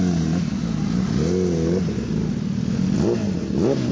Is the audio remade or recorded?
recorded